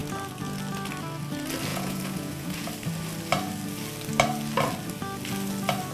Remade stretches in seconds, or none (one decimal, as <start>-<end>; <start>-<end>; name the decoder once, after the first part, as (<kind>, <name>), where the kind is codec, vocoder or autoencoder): 1.7-2.7 (vocoder, Vocos)